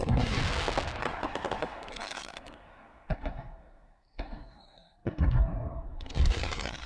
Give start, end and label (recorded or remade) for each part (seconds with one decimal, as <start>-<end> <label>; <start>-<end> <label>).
0.0-0.4 remade; 0.4-1.0 recorded; 1.0-6.9 remade